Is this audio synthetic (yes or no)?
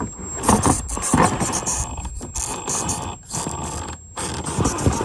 no